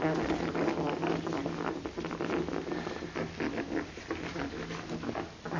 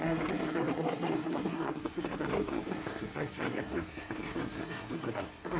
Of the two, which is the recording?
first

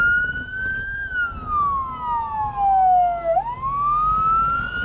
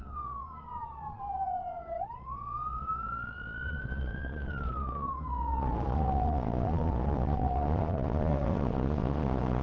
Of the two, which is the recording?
first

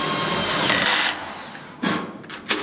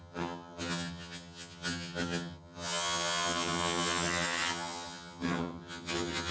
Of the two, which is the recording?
first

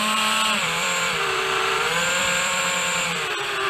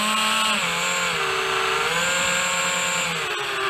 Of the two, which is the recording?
second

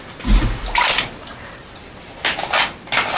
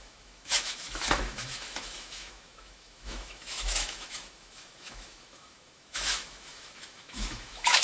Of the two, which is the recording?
first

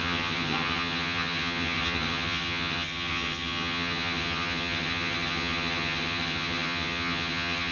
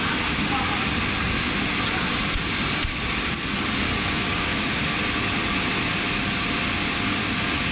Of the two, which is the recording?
second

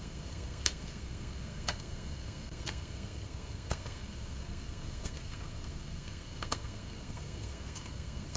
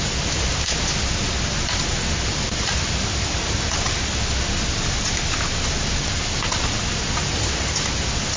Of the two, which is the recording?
second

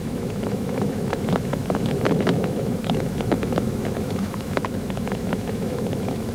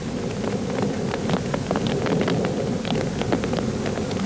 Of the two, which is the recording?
second